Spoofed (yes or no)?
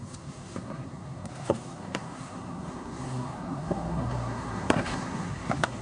yes